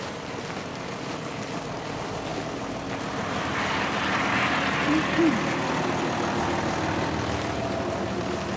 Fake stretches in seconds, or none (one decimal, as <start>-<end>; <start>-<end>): none